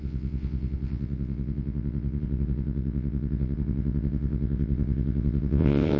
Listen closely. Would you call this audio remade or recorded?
remade